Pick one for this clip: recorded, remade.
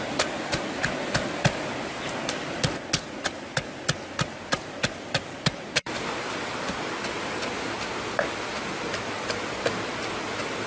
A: recorded